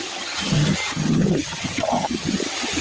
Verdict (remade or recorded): remade